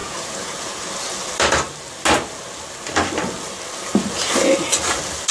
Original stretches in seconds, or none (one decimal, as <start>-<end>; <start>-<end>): 0.8-5.3

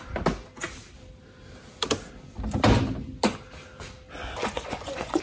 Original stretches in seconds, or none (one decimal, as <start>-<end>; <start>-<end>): 0.0-4.4

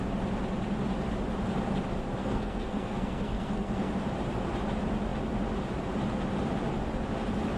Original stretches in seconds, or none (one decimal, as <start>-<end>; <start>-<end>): 0.0-2.2; 3.9-7.6

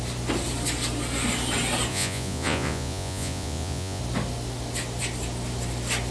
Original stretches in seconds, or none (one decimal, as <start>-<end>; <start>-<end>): 0.0-1.9; 4.0-6.1

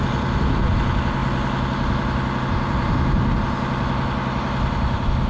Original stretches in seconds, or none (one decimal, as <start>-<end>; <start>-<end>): 0.0-5.3